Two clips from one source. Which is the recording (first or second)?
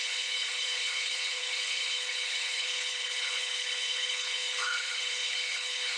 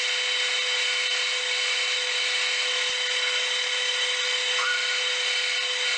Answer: second